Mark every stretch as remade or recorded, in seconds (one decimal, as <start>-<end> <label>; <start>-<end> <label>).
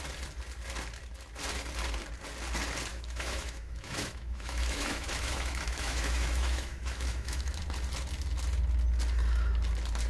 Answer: 0.0-2.9 recorded; 2.9-7.6 remade; 7.6-10.1 recorded